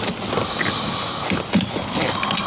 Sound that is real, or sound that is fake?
real